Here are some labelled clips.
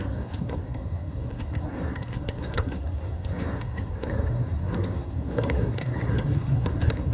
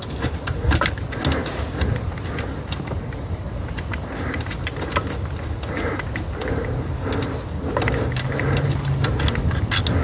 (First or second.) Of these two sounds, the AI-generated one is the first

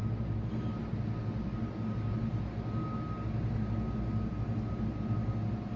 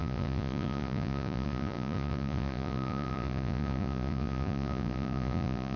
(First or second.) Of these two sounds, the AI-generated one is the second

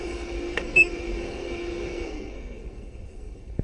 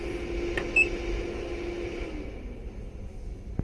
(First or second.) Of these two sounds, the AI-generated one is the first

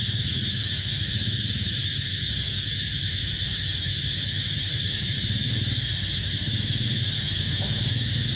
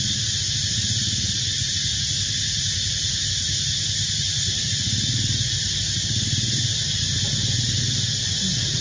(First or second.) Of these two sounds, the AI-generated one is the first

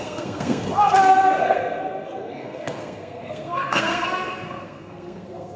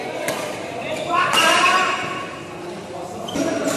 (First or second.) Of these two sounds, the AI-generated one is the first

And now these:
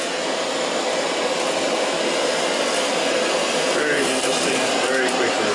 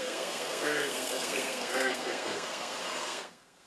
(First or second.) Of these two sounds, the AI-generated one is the second